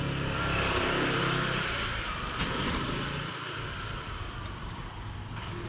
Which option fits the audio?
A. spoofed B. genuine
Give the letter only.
A